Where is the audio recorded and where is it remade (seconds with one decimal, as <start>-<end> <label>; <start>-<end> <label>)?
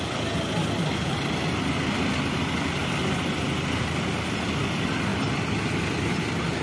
0.0-6.6 recorded